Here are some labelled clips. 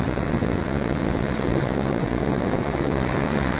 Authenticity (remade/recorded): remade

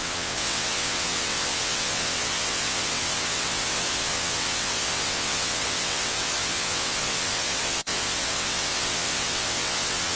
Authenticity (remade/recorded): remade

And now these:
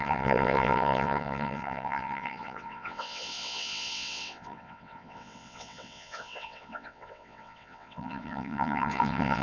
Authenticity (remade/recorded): remade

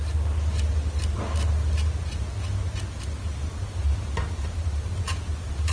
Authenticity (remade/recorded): recorded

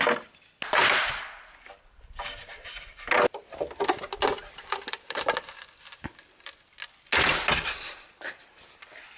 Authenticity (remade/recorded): recorded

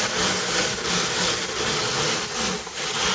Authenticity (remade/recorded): recorded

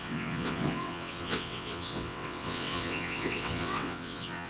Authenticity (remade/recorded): remade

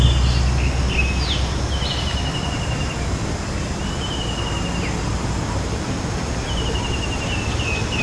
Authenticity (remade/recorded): recorded